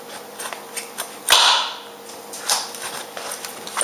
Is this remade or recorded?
recorded